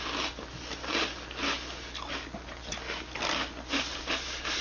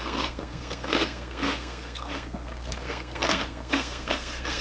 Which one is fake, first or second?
second